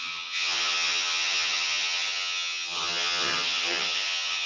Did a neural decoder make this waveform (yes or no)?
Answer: yes